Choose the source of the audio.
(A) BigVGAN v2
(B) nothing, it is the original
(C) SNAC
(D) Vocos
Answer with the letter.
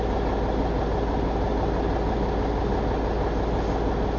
B